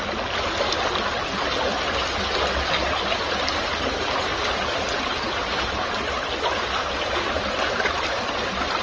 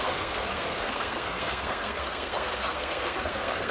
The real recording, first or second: first